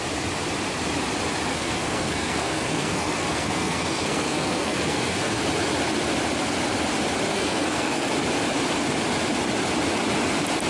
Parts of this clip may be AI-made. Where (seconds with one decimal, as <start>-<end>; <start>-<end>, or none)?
1.5-5.4; 7.3-8.1